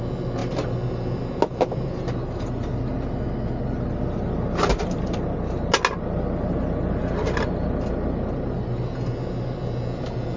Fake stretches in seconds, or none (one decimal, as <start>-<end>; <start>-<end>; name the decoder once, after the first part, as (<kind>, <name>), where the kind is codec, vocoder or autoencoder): none